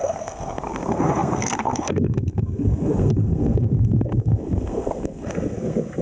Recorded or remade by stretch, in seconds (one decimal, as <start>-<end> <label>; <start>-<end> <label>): 0.0-6.0 remade